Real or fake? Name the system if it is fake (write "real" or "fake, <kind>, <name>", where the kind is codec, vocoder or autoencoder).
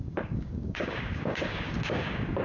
fake, codec, DAC